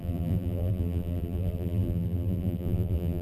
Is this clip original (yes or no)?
no